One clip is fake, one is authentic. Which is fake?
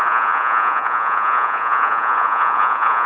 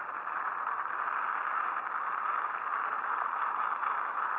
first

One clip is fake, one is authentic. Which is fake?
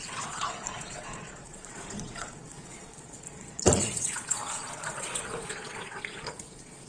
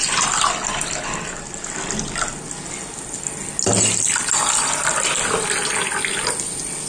first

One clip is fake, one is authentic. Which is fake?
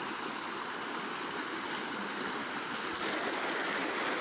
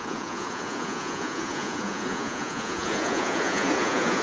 second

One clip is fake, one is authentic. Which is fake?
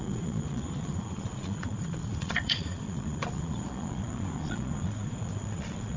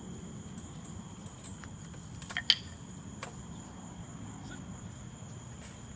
first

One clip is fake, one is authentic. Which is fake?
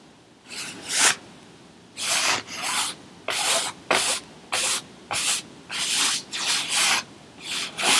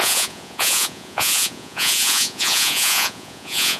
second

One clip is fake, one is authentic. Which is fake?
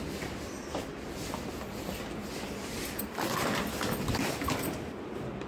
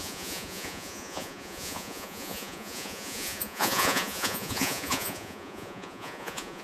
second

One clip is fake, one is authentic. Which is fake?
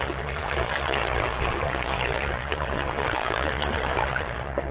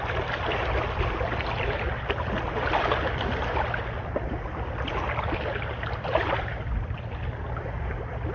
first